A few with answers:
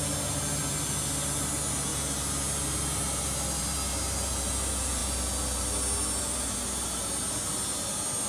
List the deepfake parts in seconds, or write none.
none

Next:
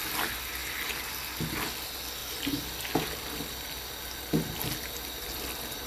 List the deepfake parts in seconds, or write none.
none